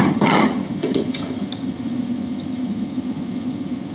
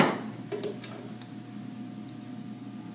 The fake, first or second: first